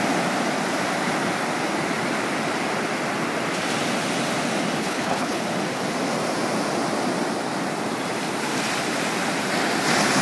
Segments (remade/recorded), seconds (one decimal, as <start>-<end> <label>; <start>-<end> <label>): 0.0-4.8 recorded; 4.8-5.4 remade; 5.4-10.2 recorded